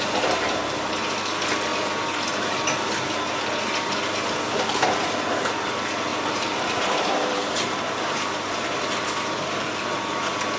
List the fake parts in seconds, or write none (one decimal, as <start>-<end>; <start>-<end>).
6.1-10.0